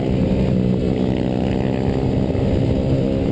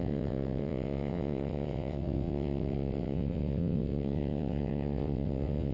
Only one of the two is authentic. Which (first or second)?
first